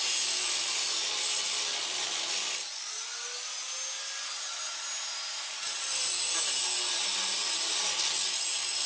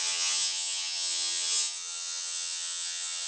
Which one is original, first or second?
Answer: first